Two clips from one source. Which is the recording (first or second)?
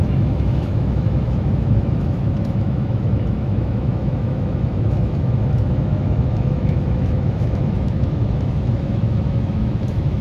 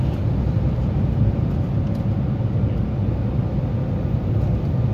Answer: second